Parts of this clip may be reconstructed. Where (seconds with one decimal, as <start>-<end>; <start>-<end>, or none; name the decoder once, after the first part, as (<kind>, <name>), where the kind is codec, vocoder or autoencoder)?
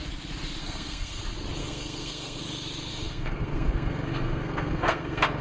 0.6-1.2 (codec, SNAC); 1.6-2.4; 2.9-5.4